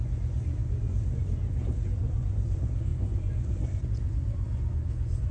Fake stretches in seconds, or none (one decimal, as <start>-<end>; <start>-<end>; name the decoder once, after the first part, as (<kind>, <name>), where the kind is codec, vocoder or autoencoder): 0.0-5.3 (vocoder, Vocos)